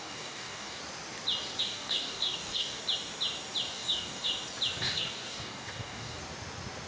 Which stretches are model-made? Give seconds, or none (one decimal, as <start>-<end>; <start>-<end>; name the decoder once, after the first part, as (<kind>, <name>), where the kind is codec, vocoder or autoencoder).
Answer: 0.0-0.8 (codec, DAC); 1.6-2.8; 3.7-4.3; 4.8-6.2